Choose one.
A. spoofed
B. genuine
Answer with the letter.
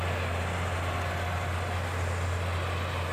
B